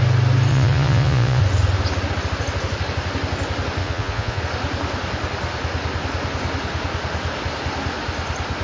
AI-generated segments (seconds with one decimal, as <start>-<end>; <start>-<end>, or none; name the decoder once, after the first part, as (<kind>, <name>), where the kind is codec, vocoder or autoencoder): 0.5-1.4 (vocoder, Vocos); 3.8-4.4